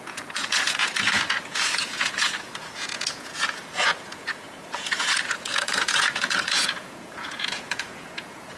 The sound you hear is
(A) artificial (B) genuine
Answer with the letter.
A